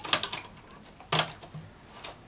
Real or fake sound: real